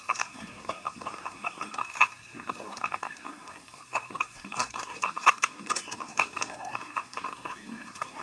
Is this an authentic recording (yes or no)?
no